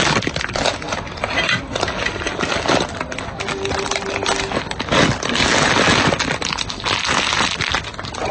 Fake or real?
real